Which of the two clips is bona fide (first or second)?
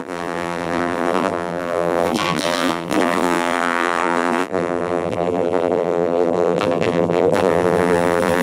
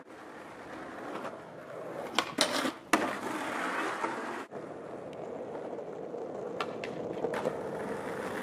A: second